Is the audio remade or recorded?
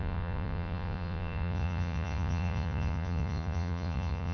remade